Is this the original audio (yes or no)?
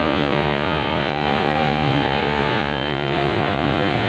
no